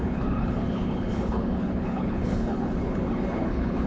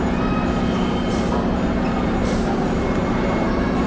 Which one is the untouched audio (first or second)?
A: second